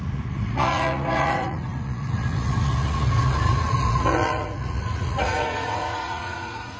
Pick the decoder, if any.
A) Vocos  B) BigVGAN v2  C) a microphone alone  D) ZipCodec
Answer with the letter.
A